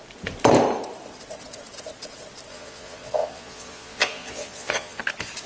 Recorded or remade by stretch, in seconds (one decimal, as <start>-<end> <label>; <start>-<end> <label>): 0.0-2.5 recorded; 2.5-5.0 remade; 5.0-5.5 recorded